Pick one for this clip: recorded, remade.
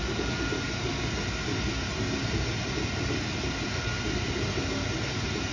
recorded